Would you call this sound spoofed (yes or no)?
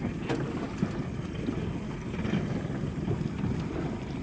no